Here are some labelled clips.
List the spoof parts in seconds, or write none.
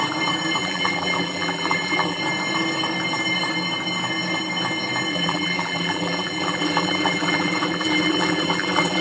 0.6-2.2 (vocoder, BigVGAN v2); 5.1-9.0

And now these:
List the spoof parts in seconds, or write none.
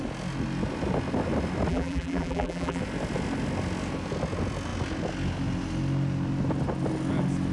1.7-2.8 (vocoder, BigVGAN v2)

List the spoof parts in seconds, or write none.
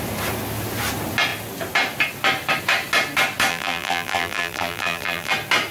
3.5-5.3 (vocoder, BigVGAN v2)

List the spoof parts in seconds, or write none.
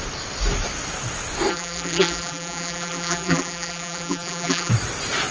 1.5-4.7 (vocoder, BigVGAN v2)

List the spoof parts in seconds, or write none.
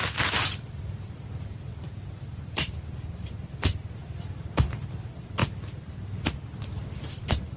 0.5-5.4 (vocoder, BigVGAN v2); 6.6-7.6